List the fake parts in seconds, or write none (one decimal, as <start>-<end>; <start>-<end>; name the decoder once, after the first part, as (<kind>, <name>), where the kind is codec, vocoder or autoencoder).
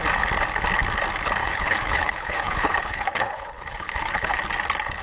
1.4-4.4 (codec, HILCodec)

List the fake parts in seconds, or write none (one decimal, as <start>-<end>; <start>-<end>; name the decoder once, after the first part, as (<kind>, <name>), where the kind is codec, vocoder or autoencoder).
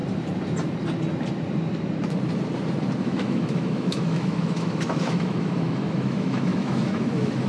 3.0-7.5 (autoencoder, DAC-VAE)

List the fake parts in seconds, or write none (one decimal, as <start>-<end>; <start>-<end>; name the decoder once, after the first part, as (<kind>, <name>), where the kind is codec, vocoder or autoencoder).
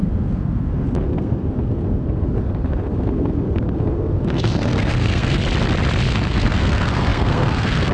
0.0-5.4 (codec, SNAC); 6.1-7.9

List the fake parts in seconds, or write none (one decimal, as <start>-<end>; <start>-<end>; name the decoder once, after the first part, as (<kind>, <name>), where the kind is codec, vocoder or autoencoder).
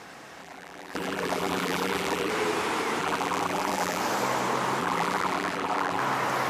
0.4-2.3 (vocoder, BigVGAN v2); 3.0-4.0; 4.8-6.0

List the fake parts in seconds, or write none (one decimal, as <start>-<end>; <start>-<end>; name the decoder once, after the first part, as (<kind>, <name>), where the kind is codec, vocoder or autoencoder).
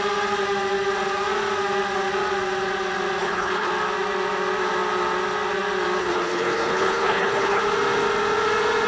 3.2-3.7 (codec, HILCodec); 6.0-7.6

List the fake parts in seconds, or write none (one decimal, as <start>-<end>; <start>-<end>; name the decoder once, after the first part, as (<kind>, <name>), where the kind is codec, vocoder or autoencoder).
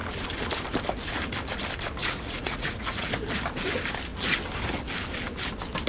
2.0-3.1 (vocoder, Vocos)